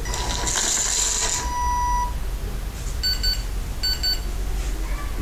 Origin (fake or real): real